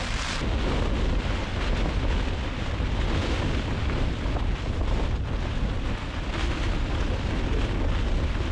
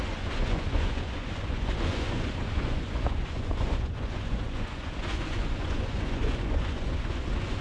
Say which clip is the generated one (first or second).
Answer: second